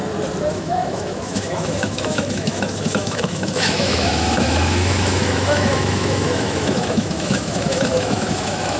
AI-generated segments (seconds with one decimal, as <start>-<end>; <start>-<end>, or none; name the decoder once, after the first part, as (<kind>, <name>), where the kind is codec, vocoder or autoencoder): 0.5-8.8 (autoencoder, DAC-VAE)